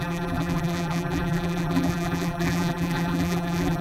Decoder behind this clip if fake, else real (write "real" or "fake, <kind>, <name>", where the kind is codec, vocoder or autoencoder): fake, vocoder, BigVGAN v2